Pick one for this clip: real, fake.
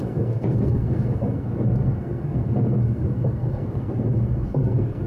fake